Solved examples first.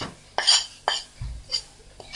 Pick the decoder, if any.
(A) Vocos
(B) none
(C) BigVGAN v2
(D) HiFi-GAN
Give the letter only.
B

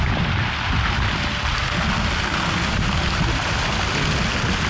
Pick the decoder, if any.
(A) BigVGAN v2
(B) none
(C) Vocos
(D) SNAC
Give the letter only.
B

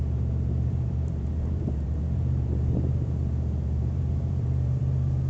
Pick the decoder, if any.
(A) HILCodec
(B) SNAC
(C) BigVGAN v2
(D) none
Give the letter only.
C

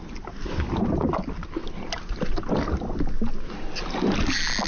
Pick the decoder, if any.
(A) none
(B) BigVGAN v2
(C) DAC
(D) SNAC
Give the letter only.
A